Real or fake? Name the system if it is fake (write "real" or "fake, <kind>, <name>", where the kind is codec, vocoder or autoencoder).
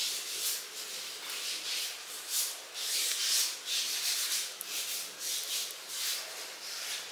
real